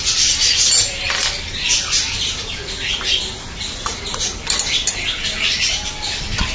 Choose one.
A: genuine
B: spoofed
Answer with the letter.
A